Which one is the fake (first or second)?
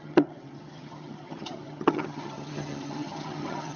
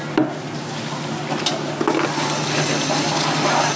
first